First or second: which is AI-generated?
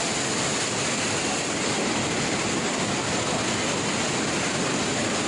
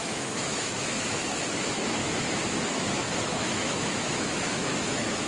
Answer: second